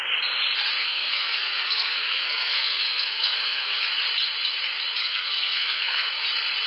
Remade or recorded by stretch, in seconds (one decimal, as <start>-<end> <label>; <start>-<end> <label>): 0.0-0.8 recorded; 0.8-3.8 remade; 3.8-5.0 recorded; 5.0-6.1 remade; 6.1-6.7 recorded